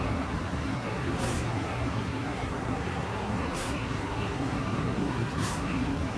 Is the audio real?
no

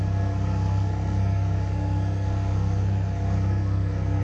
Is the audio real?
no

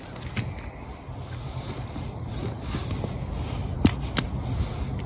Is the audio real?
yes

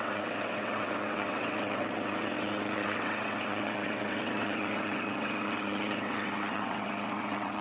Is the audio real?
no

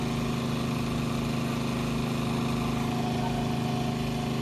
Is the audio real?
yes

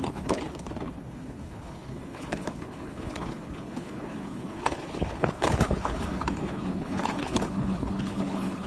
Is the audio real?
no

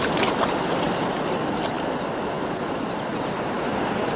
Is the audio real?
yes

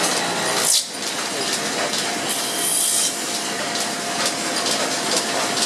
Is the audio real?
yes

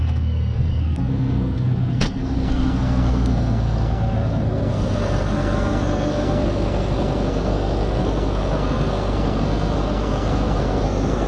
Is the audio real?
no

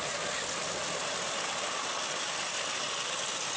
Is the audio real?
yes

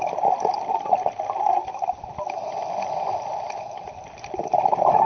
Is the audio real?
yes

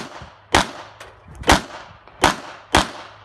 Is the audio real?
yes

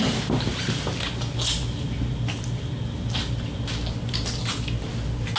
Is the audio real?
yes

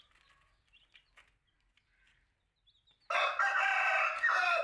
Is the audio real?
yes